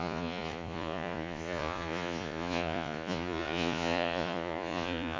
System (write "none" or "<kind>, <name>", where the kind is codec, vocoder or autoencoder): vocoder, Vocos